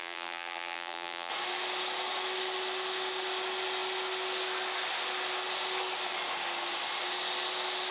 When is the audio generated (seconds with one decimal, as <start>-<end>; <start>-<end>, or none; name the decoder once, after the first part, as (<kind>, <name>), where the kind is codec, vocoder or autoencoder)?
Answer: 0.0-1.3 (vocoder, BigVGAN v2)